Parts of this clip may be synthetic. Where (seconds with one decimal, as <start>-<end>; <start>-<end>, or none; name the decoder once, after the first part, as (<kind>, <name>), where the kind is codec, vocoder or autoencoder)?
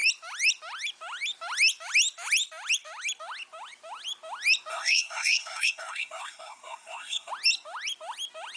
4.7-7.3 (codec, SNAC)